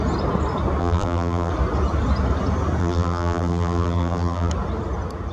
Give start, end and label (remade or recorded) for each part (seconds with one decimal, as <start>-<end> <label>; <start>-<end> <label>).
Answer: 0.0-0.8 recorded; 0.8-1.5 remade; 1.5-2.8 recorded; 2.8-4.5 remade; 4.5-5.3 recorded